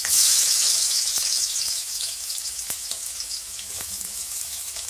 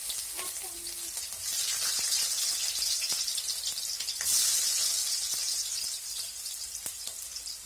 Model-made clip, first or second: first